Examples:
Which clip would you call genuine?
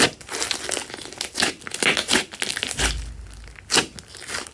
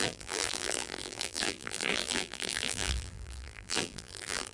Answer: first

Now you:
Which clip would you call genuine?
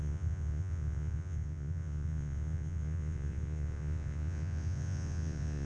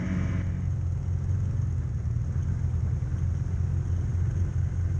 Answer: second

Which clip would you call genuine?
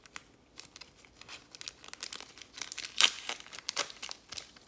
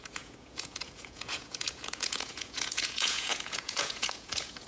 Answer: first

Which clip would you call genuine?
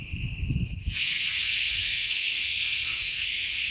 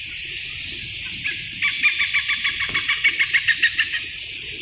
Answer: second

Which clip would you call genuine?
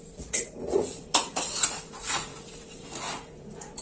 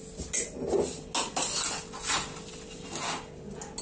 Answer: second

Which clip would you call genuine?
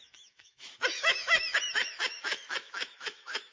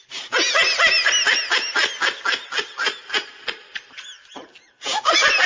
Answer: second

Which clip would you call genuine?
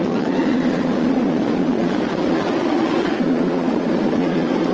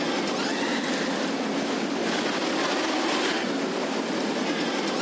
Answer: second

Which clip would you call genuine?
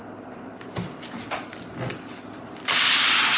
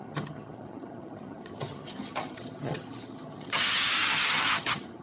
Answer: first